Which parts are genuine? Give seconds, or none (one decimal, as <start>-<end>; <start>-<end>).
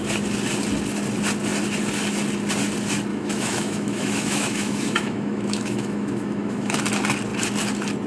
0.0-3.1; 6.8-8.1